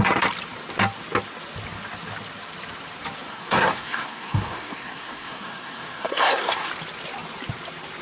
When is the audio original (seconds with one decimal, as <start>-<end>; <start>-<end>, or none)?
0.0-3.3; 6.7-8.0